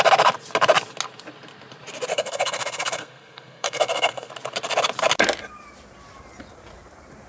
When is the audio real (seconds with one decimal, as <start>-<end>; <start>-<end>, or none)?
0.0-2.1; 4.3-7.3